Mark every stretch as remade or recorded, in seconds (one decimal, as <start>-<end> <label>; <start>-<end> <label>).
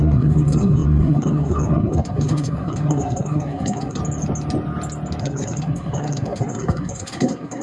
0.0-4.0 remade; 4.0-5.2 recorded; 5.2-7.6 remade